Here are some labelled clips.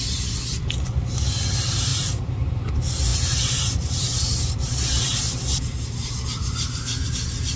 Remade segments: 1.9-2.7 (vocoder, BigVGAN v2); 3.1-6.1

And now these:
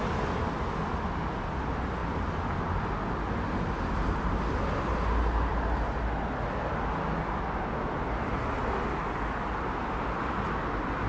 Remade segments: none

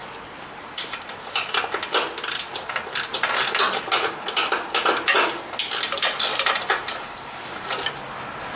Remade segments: 6.3-7.9 (vocoder, BigVGAN v2)

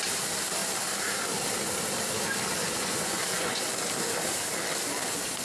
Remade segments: 2.6-3.6 (vocoder, Vocos)

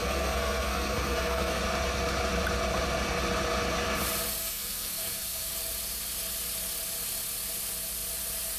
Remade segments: 0.0-1.6 (codec, SNAC); 4.4-5.5

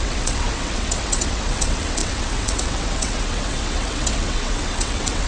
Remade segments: 0.0-5.3 (vocoder, WaveNeXt)

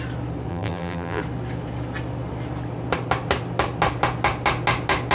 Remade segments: 0.5-1.2 (vocoder, BigVGAN v2)

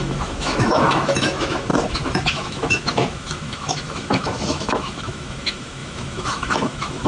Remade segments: 0.0-7.1 (autoencoder, DAC-VAE)